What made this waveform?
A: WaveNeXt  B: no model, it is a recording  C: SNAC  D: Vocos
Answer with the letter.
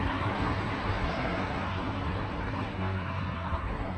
C